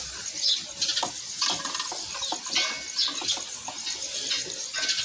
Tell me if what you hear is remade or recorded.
recorded